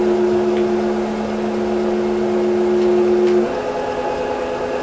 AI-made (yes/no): no